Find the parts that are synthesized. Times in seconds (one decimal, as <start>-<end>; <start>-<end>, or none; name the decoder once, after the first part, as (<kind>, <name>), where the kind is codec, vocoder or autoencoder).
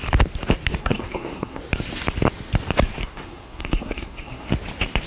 0.8-1.6 (codec, SNAC); 3.0-4.5